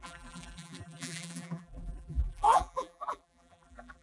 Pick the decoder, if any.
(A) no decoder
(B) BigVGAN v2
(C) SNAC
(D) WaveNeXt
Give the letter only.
B